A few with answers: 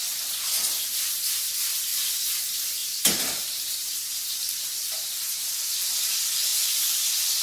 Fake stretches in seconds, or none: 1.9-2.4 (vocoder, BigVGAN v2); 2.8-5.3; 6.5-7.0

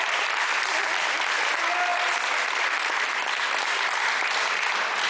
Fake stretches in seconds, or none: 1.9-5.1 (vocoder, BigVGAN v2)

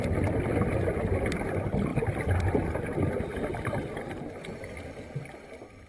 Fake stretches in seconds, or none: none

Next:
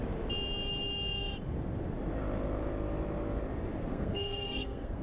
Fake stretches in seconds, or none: 3.9-5.0 (codec, SNAC)